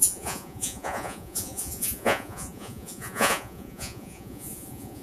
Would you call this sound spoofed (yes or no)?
yes